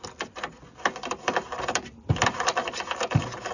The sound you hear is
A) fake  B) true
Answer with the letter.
B